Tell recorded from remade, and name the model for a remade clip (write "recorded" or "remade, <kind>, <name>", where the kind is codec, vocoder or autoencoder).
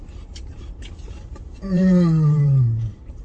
remade, vocoder, BigVGAN v2